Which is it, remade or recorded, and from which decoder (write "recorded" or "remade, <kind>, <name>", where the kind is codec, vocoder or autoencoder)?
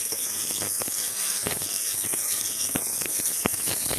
remade, codec, SNAC